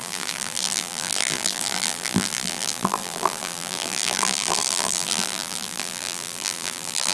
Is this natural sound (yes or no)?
no